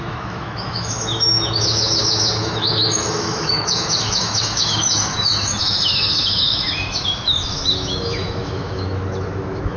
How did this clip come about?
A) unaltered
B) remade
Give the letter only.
B